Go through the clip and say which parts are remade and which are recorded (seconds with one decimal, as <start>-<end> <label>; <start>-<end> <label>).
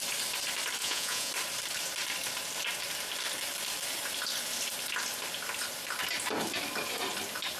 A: 0.0-0.8 recorded; 0.8-1.3 remade; 1.3-7.6 recorded